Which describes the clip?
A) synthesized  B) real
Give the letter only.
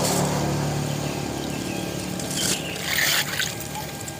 A